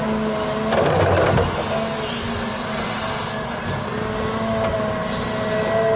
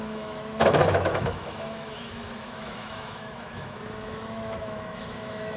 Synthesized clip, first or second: second